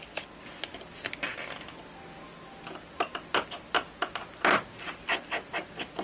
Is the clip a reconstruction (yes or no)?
no